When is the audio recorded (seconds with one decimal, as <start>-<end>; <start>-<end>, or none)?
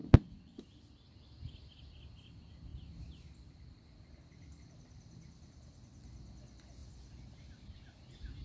0.6-8.4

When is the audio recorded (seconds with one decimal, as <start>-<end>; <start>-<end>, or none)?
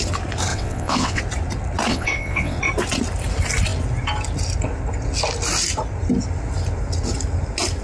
0.0-0.5; 1.2-1.9; 2.6-7.8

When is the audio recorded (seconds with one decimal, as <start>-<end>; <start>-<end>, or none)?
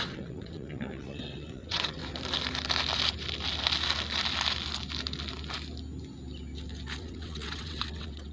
2.0-7.0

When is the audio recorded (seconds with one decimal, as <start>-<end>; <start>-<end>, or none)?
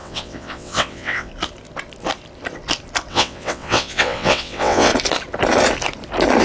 1.3-3.1; 4.9-6.4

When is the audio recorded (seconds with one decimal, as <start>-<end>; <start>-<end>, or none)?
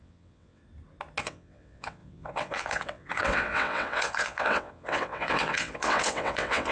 0.6-1.2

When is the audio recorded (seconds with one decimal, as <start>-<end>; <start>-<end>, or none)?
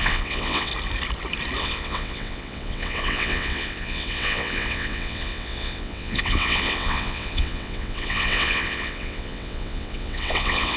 0.7-1.6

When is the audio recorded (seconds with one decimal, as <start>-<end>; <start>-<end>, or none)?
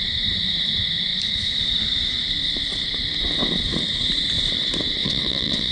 0.0-5.0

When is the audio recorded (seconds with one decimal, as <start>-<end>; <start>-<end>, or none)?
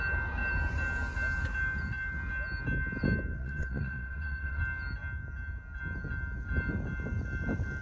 0.0-3.3; 4.6-7.8